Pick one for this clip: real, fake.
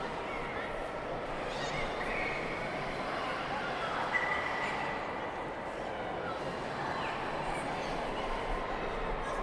real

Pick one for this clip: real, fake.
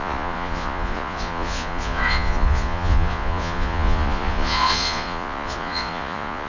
fake